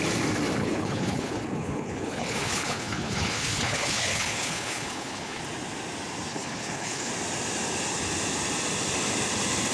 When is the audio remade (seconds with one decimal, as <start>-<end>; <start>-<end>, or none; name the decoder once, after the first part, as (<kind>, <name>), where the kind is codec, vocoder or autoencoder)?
0.6-5.4 (codec, HILCodec); 6.3-7.1